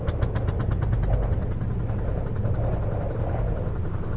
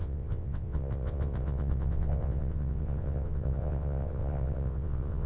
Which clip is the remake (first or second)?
second